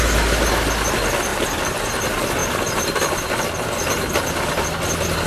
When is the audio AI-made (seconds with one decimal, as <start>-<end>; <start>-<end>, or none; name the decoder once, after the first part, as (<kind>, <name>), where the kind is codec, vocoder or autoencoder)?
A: 1.3-1.9 (vocoder, BigVGAN v2)